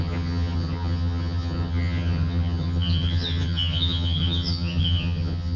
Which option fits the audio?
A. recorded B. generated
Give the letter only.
B